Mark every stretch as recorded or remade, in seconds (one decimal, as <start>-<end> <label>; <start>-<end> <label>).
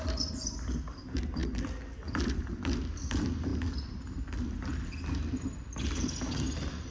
0.0-6.9 recorded